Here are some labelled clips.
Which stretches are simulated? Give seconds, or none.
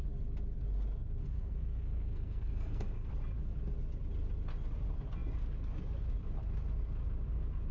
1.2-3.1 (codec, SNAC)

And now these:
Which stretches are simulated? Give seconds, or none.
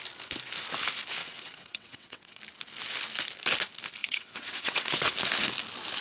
1.2-2.4 (vocoder, WaveNeXt); 4.0-5.1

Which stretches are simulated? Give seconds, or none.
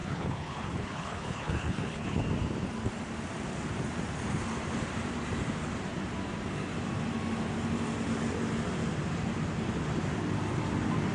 0.0-2.2 (codec, HILCodec)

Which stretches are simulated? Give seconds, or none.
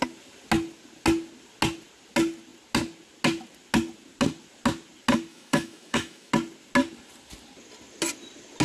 5.3-6.3 (autoencoder, DAC-VAE)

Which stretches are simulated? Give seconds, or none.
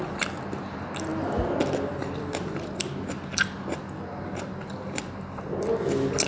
none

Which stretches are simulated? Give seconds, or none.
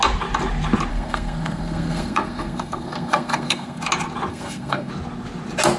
0.9-3.8 (codec, SNAC); 4.3-4.9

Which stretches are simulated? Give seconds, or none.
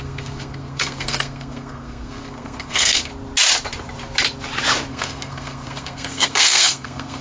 0.0-3.1 (codec, SNAC); 4.9-7.2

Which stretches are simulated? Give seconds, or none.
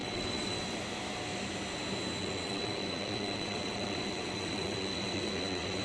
0.0-0.6 (vocoder, WaveNeXt); 2.2-5.8